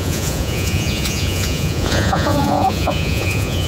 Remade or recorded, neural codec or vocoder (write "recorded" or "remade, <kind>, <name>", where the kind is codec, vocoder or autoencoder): remade, vocoder, Vocos